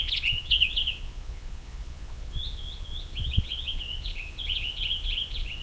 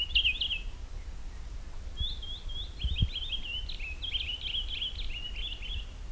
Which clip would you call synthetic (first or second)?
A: first